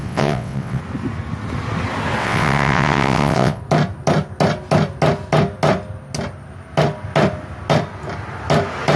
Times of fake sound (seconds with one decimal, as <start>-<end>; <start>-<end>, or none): 0.0-0.8; 2.2-3.6